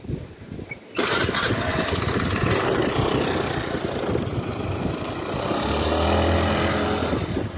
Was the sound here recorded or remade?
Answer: recorded